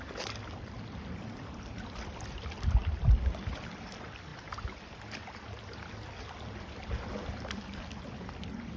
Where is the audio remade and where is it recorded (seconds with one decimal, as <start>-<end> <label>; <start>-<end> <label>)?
0.0-8.8 recorded